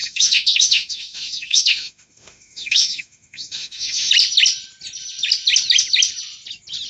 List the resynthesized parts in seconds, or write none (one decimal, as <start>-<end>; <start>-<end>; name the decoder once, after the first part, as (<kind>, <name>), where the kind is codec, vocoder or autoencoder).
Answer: 0.0-4.1 (autoencoder, DAC-VAE)